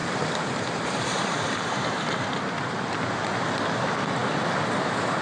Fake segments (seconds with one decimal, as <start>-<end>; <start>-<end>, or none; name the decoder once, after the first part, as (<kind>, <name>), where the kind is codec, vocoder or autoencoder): 0.0-3.1 (vocoder, BigVGAN v2)